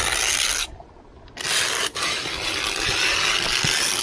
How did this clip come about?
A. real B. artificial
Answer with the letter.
A